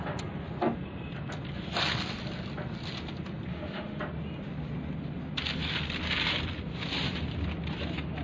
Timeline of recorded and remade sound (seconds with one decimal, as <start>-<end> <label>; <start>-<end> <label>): 0.0-3.5 recorded; 3.5-4.0 remade; 4.0-8.2 recorded

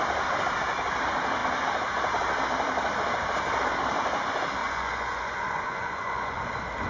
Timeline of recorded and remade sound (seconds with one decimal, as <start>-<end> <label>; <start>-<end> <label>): 0.0-4.6 recorded; 4.6-6.5 remade; 6.5-6.9 recorded

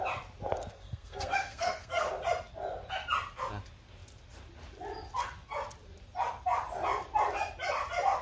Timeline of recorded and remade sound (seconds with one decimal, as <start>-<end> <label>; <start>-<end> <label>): 0.0-0.7 recorded; 0.7-2.1 remade; 2.1-8.2 recorded

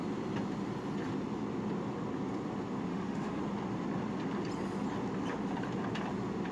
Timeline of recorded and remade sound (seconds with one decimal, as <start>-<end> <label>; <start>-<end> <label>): 0.0-2.9 recorded; 2.9-3.4 remade; 3.4-6.5 recorded

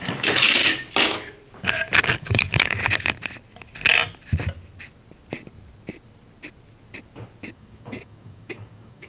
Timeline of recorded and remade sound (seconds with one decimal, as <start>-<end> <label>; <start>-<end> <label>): 0.0-0.6 remade; 0.6-2.0 recorded; 2.0-2.8 remade; 2.8-7.4 recorded; 7.4-9.1 remade

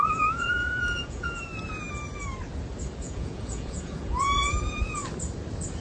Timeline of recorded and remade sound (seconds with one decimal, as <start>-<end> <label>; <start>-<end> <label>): 0.0-1.5 remade; 1.5-3.0 recorded; 3.0-5.0 remade; 5.0-5.8 recorded

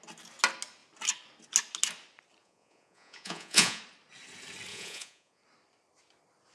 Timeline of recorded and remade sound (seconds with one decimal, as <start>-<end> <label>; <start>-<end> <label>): 0.0-2.4 recorded; 2.4-3.8 remade; 3.8-4.7 recorded; 4.7-5.4 remade; 5.4-6.5 recorded